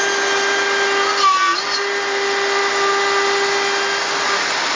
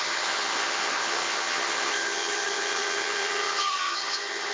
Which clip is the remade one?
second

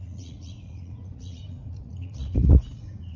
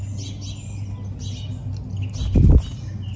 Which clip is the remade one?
first